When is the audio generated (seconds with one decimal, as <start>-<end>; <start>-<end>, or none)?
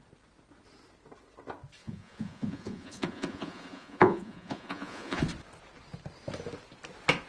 1.8-5.2